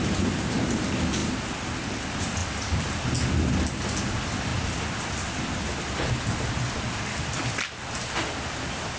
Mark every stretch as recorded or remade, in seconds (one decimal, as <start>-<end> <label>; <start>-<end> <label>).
0.0-9.0 recorded